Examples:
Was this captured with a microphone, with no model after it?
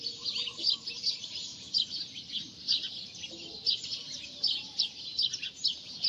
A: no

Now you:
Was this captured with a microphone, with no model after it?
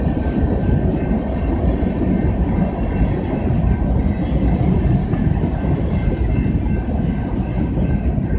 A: yes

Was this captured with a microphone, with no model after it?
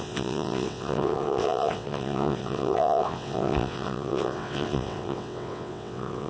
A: no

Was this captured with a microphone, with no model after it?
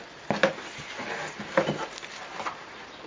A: yes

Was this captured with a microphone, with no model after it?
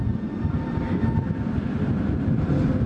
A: yes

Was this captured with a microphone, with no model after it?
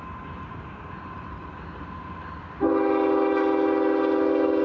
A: yes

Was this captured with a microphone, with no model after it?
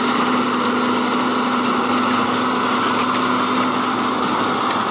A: yes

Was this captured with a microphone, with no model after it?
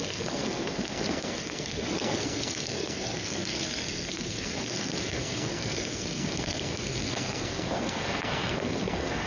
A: no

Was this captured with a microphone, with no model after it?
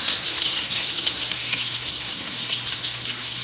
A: no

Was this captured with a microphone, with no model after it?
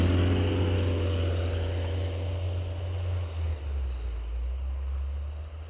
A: yes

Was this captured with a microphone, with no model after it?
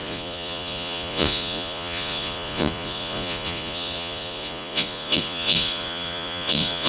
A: no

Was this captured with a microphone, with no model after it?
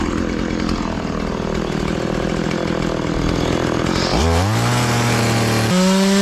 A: yes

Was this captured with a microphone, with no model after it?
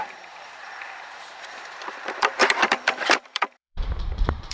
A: no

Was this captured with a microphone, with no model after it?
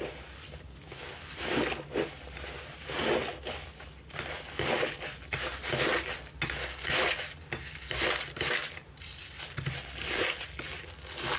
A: yes